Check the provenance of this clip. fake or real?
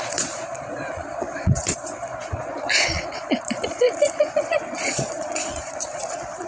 fake